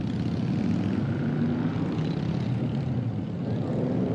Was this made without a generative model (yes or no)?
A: yes